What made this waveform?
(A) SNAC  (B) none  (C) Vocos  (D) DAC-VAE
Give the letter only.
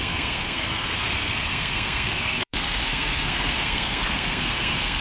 A